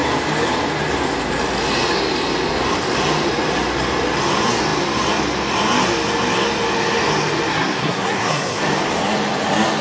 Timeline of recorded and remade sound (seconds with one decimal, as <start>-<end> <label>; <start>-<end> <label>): 0.0-7.5 recorded; 7.5-8.6 remade; 8.6-9.8 recorded